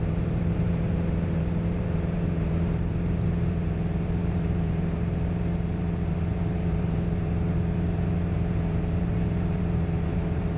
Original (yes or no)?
no